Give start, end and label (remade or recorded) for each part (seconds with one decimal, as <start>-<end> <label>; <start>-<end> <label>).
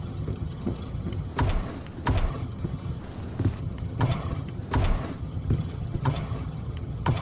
0.0-1.3 remade; 1.3-2.3 recorded; 2.3-3.0 remade; 3.0-3.6 recorded; 3.6-4.6 remade; 4.6-5.2 recorded; 5.2-7.2 remade